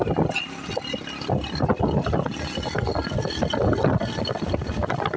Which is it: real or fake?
real